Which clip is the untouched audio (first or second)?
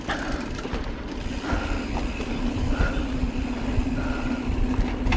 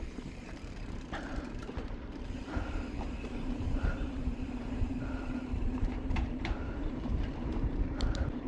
first